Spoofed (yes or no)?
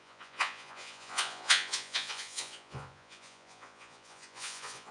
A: yes